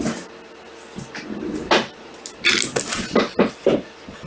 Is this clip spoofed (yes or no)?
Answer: no